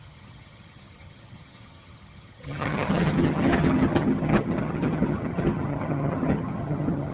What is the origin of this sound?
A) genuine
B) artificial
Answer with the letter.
B